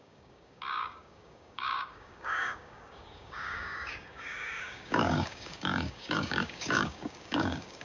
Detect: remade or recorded remade